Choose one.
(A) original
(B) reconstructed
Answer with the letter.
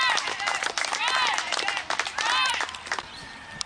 A